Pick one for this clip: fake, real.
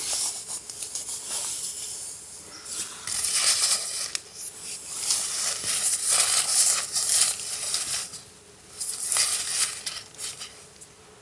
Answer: real